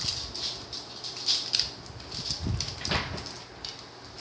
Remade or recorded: recorded